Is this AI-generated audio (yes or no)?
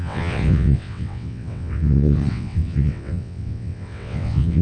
yes